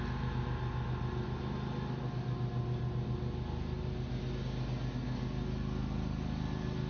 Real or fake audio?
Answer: real